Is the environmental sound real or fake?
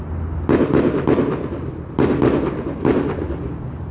real